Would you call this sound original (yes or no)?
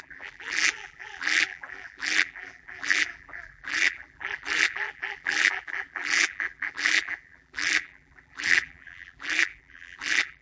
no